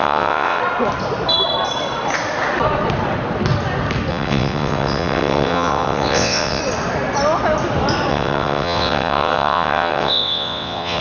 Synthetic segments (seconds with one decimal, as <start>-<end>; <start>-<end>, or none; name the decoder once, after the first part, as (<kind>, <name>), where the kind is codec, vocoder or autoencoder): 0.0-0.6 (vocoder, WaveNeXt); 4.1-6.6; 8.1-11.0

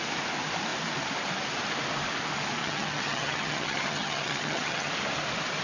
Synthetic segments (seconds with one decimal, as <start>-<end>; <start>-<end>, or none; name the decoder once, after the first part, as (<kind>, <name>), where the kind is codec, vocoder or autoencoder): 2.6-4.9 (vocoder, HiFi-GAN)

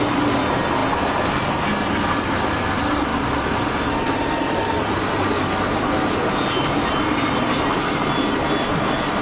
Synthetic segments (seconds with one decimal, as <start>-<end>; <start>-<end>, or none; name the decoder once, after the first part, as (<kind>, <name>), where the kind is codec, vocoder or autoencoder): none